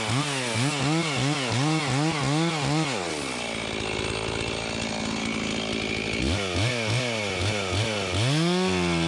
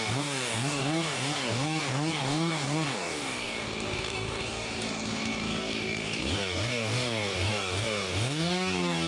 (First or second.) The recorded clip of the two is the first